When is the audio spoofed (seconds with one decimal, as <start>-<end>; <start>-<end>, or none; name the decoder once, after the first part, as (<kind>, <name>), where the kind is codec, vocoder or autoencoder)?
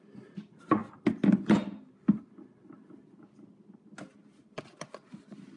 none